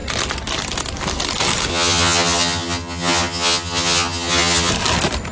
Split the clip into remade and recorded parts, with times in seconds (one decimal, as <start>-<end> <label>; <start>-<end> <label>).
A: 0.0-1.7 recorded; 1.7-4.7 remade; 4.7-5.3 recorded